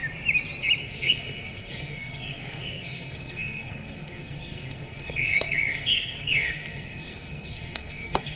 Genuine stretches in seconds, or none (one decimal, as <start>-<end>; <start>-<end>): 0.0-0.8